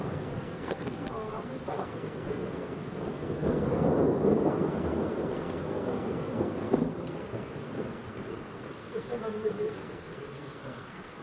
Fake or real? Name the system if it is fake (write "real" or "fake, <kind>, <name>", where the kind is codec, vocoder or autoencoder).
fake, codec, SNAC